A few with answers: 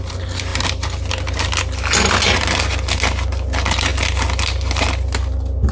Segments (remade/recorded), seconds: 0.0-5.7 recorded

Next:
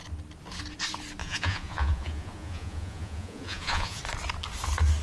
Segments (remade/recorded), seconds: 0.0-1.2 recorded; 1.2-4.0 remade; 4.0-5.0 recorded

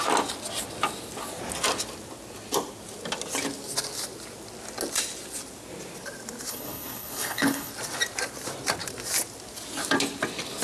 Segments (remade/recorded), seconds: 0.0-6.5 recorded; 6.5-7.7 remade; 7.7-10.6 recorded

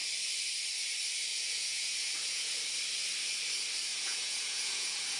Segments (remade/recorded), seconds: 0.0-1.3 recorded; 1.3-2.6 remade; 2.6-3.9 recorded; 3.9-5.2 remade